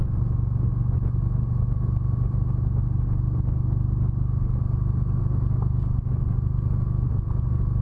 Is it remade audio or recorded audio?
recorded